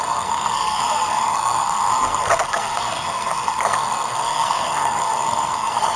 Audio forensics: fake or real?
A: fake